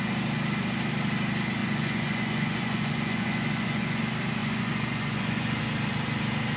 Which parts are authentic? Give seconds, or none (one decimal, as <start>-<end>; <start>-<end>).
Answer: 0.0-1.6; 4.0-4.4; 5.6-6.6